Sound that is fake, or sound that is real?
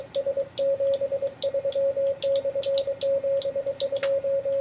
real